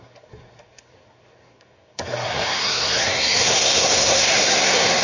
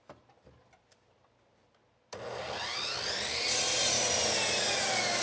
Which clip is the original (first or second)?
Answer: second